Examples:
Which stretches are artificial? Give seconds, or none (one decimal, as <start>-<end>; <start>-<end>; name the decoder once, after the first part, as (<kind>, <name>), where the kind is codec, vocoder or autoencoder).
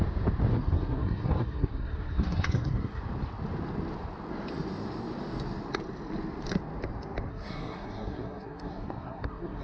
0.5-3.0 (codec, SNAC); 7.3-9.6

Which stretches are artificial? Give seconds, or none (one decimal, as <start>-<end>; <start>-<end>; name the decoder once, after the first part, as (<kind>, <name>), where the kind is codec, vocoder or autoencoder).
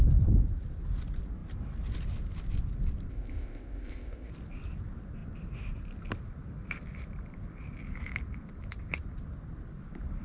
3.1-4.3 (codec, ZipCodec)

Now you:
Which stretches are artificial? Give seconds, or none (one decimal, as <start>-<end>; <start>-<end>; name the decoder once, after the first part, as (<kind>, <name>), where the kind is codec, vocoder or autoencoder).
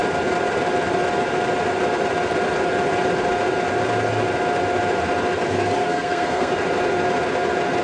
5.8-6.5 (codec, SNAC)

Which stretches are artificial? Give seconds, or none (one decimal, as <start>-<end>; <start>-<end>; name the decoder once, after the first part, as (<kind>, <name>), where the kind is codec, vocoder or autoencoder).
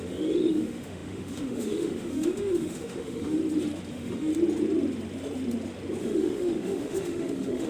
0.0-3.4 (autoencoder, DAC-VAE); 3.9-4.3; 6.0-7.7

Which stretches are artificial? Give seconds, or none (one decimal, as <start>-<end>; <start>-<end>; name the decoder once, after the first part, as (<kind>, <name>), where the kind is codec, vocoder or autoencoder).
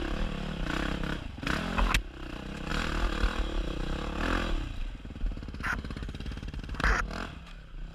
none